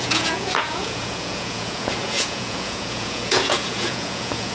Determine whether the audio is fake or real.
fake